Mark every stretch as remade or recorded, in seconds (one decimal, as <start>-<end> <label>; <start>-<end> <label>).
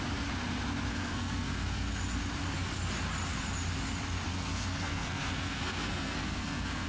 0.0-0.9 recorded; 0.9-1.9 remade; 1.9-4.3 recorded; 4.3-6.9 remade